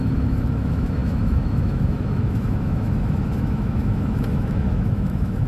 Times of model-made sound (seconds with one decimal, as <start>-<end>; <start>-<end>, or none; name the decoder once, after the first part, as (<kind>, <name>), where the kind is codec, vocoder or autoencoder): 0.0-5.5 (autoencoder, DAC-VAE)